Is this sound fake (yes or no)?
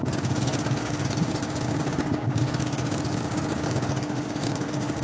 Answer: yes